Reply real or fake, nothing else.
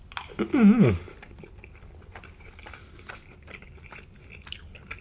real